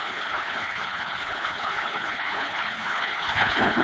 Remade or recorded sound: remade